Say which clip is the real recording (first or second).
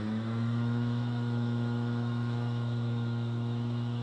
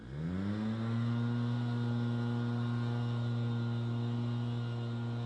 second